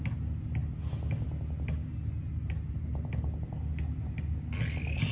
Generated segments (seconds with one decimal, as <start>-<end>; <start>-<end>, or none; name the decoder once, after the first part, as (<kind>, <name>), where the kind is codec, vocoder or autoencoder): none